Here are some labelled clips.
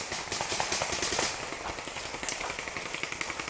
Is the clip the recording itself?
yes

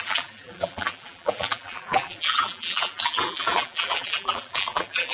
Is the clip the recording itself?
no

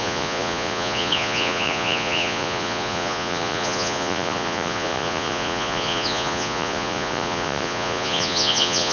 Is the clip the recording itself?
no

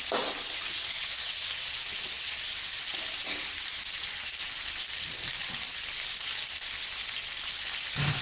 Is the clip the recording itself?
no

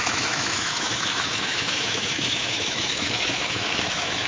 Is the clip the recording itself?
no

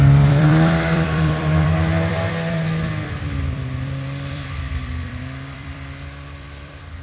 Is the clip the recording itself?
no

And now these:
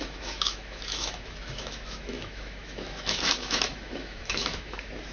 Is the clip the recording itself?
no